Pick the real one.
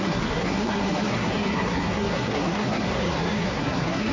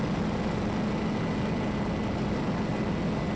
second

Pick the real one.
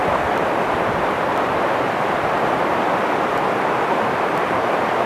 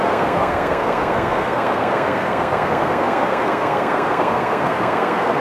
first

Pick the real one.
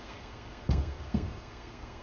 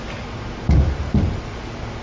second